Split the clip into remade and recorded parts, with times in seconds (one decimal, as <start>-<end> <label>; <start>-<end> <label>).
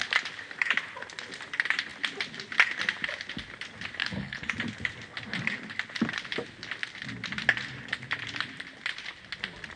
0.0-4.0 recorded; 4.0-4.5 remade; 4.5-9.8 recorded